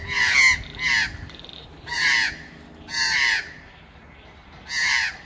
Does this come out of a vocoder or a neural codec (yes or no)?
no